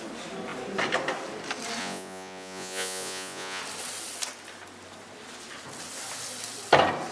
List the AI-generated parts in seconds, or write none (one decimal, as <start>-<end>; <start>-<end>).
1.8-3.6